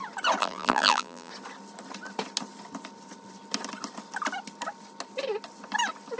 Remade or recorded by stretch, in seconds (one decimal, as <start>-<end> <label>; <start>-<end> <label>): 0.0-0.4 recorded; 0.4-1.3 remade; 1.3-6.2 recorded